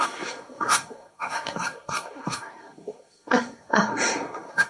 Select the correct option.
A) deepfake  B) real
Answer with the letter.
A